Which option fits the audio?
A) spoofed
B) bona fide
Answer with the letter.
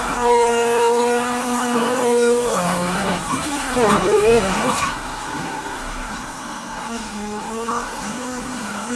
A